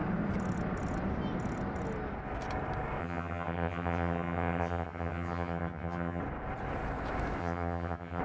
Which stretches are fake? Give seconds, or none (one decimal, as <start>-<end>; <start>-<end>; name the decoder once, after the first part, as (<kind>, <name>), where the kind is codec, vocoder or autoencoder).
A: 3.0-6.2 (vocoder, HiFi-GAN); 7.4-8.2